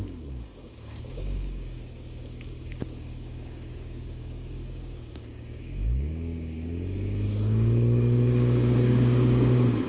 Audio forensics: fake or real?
fake